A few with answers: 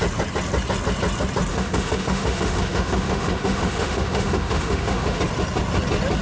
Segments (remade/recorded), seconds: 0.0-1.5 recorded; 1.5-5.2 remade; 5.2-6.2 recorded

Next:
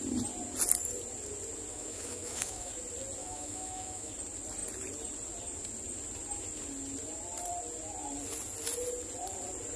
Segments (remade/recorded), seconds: 0.0-1.7 recorded; 1.7-2.7 remade; 2.7-3.2 recorded; 3.2-4.1 remade; 4.1-9.8 recorded

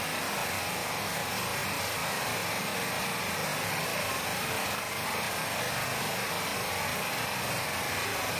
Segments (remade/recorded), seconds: 0.0-8.4 recorded

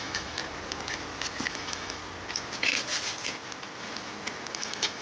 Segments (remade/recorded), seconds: 0.0-0.4 remade; 0.4-1.5 recorded; 1.5-2.0 remade; 2.0-4.5 recorded; 4.5-5.0 remade

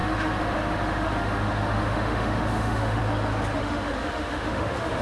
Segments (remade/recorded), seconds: 0.0-3.0 remade; 3.0-3.6 recorded; 3.6-5.0 remade